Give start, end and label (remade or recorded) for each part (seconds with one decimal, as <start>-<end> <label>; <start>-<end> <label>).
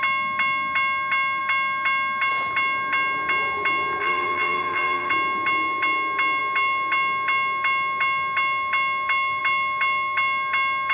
0.0-4.0 recorded; 4.0-5.1 remade; 5.1-10.9 recorded